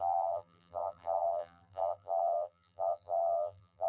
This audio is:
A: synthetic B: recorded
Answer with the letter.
A